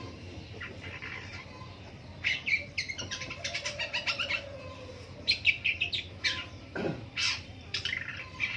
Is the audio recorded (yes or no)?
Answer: no